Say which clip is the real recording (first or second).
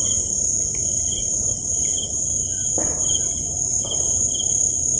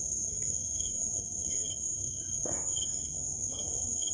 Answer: first